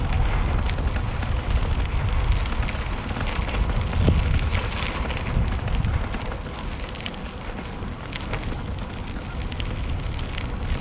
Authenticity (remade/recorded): recorded